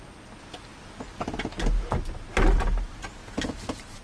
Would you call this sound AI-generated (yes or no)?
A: no